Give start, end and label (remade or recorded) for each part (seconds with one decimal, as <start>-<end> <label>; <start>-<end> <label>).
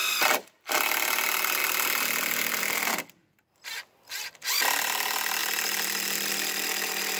0.0-7.2 recorded